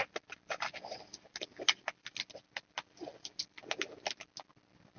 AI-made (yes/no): no